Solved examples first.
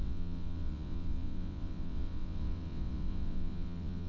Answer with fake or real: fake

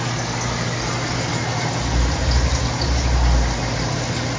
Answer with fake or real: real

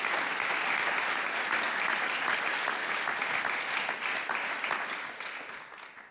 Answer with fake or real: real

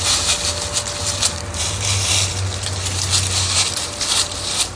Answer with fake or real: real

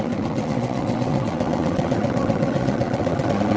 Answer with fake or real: fake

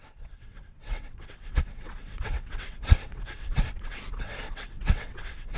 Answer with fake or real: fake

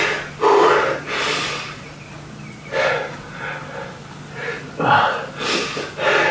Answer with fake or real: real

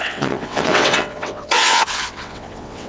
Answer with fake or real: fake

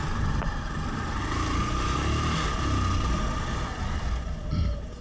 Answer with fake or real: real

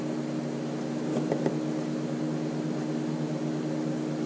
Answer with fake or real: real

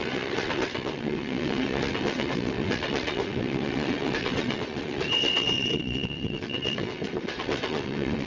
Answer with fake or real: fake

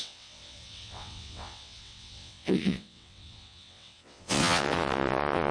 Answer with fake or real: fake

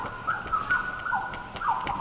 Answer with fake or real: real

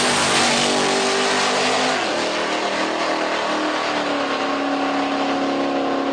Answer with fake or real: real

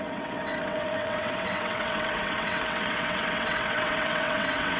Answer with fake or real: fake